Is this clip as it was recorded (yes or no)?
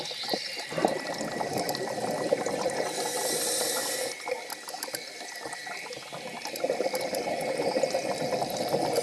yes